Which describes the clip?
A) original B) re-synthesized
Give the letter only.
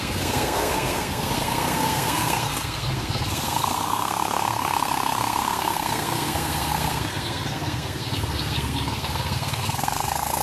B